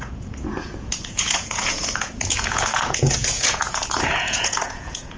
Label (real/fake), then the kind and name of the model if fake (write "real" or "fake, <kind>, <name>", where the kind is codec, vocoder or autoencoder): fake, vocoder, Vocos